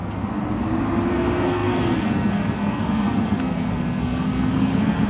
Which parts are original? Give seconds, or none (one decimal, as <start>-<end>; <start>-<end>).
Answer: 0.4-1.1